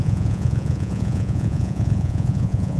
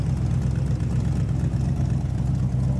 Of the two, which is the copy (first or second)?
first